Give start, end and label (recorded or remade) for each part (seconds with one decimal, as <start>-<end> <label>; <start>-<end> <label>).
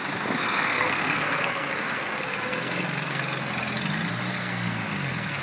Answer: 0.0-0.4 recorded; 0.4-3.5 remade; 3.5-4.3 recorded; 4.3-5.4 remade